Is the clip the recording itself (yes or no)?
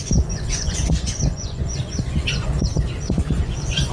no